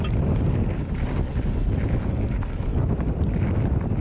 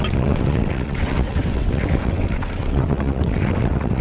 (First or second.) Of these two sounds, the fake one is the second